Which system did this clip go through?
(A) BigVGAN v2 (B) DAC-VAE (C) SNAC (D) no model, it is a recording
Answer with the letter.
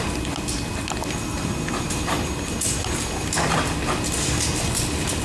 D